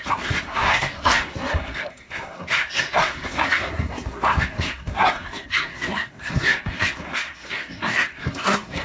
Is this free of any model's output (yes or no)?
no